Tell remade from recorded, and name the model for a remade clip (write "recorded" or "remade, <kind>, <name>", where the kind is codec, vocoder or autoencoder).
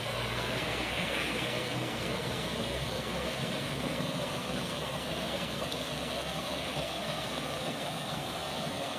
remade, codec, SNAC